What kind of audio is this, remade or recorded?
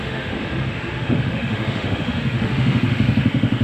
remade